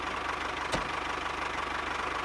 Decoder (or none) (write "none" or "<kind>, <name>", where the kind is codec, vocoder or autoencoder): none